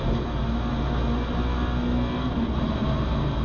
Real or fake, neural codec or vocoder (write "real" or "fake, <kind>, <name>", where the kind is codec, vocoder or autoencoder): real